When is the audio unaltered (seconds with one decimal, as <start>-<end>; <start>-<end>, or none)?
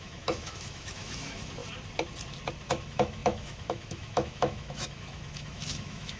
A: 1.6-2.8